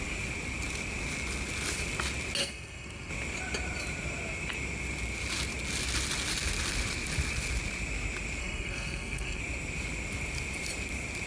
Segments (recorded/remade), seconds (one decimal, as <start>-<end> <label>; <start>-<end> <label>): 0.0-2.4 recorded; 2.4-3.1 remade; 3.1-8.4 recorded; 8.4-9.4 remade; 9.4-11.3 recorded